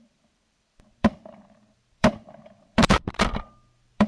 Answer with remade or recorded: remade